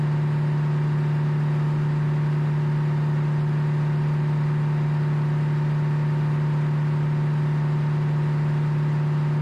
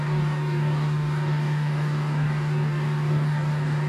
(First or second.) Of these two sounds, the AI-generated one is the second